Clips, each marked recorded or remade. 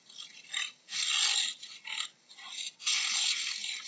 recorded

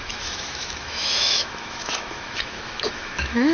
remade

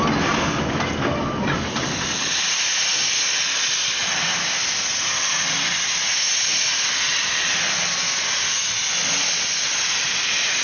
recorded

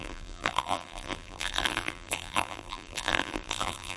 remade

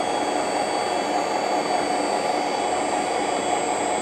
recorded